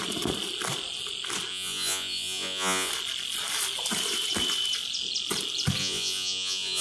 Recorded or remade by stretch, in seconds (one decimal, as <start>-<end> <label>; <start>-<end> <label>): 0.0-1.5 recorded; 1.5-2.9 remade; 2.9-5.8 recorded; 5.8-6.8 remade